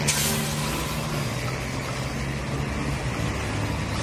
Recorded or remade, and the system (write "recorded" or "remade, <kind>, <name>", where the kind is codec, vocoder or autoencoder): recorded